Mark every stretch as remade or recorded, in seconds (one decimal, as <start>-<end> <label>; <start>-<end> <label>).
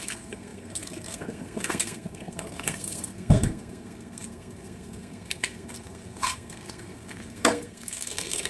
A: 0.0-8.5 remade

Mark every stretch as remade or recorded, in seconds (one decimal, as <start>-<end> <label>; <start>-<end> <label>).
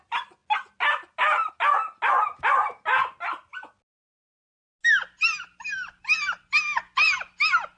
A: 0.0-7.8 recorded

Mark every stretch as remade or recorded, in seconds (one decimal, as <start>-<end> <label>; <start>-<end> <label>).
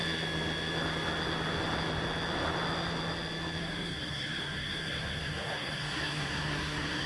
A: 0.0-3.6 recorded; 3.6-7.1 remade